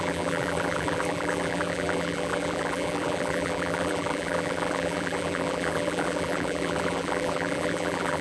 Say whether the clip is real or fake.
fake